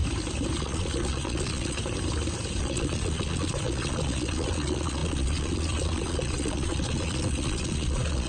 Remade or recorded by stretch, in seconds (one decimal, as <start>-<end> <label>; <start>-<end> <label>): 0.0-0.6 recorded; 0.6-1.8 remade; 1.8-2.6 recorded; 2.6-8.3 remade

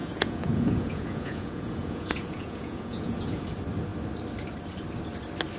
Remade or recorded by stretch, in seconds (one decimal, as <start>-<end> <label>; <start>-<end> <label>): 0.0-3.4 remade; 3.4-5.6 recorded